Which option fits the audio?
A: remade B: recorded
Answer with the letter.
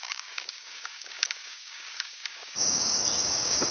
A